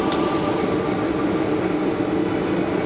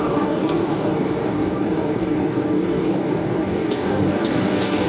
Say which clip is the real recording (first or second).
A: first